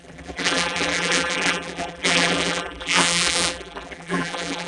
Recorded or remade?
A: remade